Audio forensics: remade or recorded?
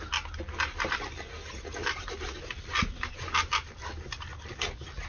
recorded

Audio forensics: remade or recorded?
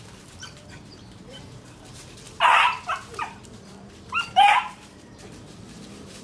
remade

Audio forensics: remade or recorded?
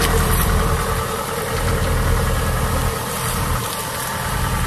remade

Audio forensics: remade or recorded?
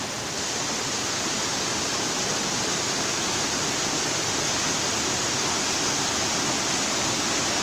recorded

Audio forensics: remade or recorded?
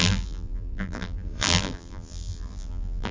remade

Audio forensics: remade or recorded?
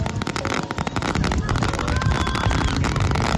remade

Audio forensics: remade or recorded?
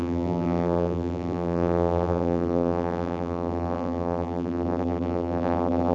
remade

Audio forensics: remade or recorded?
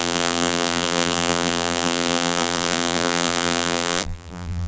remade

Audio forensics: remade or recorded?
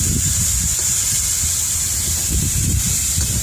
remade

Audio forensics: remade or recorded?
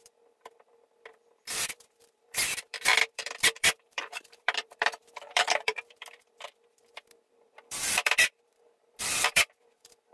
remade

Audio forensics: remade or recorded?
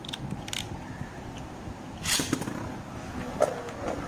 recorded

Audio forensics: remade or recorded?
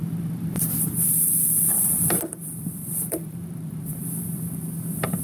remade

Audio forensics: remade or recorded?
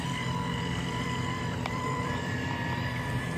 remade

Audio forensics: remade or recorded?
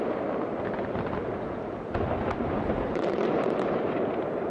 remade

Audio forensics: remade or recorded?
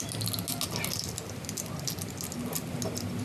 recorded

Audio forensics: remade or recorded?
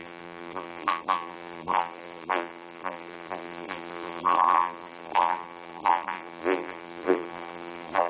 remade